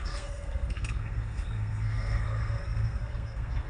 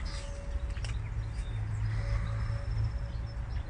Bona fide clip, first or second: second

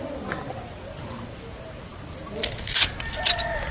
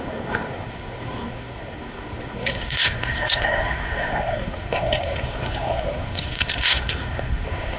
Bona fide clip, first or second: first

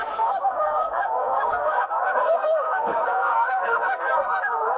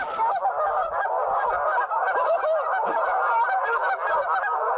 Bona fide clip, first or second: second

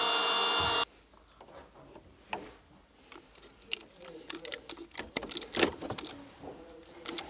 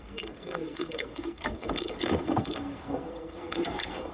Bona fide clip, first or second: first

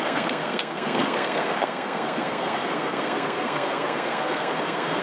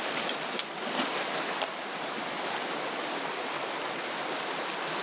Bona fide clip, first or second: second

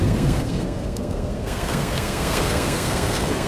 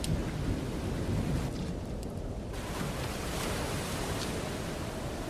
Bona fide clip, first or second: second